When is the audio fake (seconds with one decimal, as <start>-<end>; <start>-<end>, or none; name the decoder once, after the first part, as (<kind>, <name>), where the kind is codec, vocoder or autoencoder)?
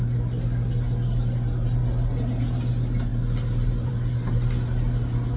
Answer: none